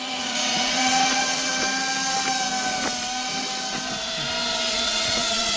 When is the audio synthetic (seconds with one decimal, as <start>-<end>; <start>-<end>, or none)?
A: 0.0-1.5; 4.7-5.6